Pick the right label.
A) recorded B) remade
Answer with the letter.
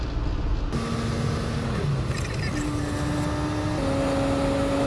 A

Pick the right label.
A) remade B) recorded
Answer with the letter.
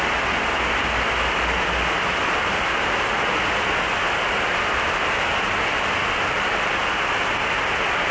B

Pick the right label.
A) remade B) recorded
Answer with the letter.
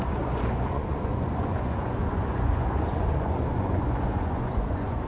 A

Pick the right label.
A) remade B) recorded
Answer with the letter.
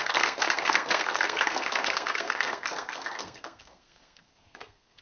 A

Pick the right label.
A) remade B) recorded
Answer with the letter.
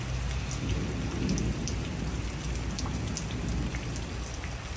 B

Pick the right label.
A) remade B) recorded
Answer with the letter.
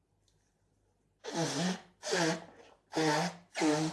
B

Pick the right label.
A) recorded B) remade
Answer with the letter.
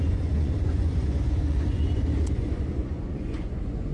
B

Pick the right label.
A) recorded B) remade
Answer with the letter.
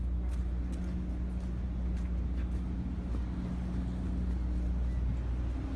A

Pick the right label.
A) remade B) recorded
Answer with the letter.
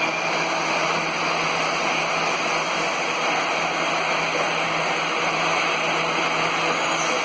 B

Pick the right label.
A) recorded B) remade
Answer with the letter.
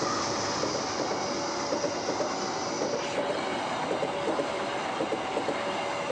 A